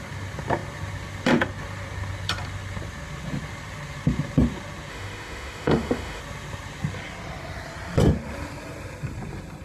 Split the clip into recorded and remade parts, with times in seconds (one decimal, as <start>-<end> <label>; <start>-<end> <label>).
0.0-4.9 recorded; 4.9-6.2 remade; 6.2-9.6 recorded